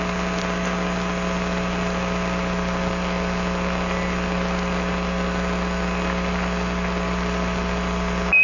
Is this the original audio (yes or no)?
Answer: yes